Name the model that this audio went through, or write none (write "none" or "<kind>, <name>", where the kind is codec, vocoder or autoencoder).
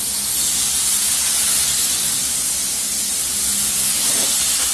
none